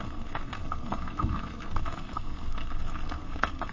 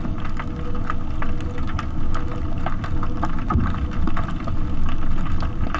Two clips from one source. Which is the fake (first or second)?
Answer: first